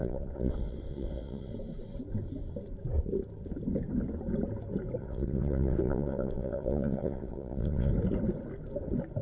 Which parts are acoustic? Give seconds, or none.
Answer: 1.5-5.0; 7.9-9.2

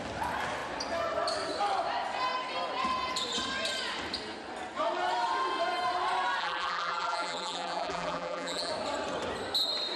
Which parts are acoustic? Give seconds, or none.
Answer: 0.0-6.4; 8.7-10.0

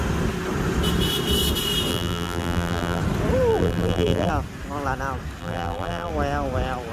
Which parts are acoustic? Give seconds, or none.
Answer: 0.0-1.9; 3.0-3.5; 4.3-5.4; 6.1-6.9

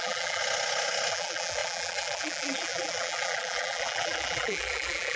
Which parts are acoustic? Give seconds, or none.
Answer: 0.4-1.1

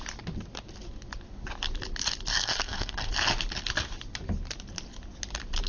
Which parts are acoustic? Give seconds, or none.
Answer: 0.0-2.3; 3.1-5.7

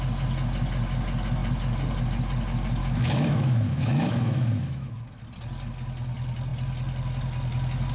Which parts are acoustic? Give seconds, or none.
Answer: 0.0-2.8; 4.9-7.9